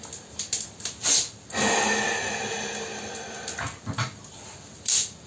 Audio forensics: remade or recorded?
recorded